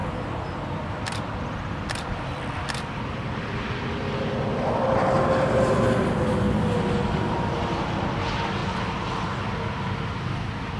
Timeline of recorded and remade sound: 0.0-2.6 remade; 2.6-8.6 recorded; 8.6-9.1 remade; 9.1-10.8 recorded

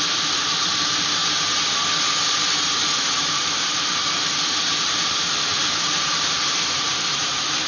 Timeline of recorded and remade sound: 0.0-1.2 remade; 1.2-4.6 recorded; 4.6-7.7 remade

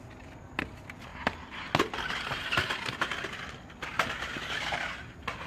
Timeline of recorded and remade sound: 0.0-5.5 recorded

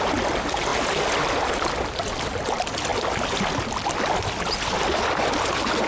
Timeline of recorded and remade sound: 0.0-5.9 recorded